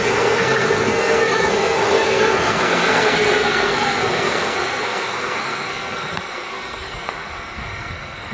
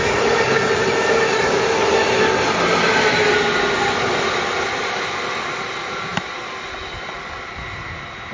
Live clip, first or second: second